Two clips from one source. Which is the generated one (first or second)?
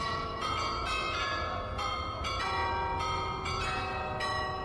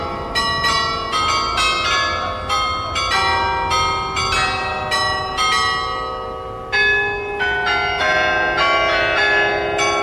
first